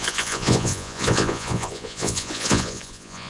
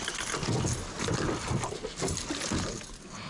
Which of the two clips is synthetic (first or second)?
first